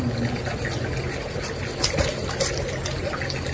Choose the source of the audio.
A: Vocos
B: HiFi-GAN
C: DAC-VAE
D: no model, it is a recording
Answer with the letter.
D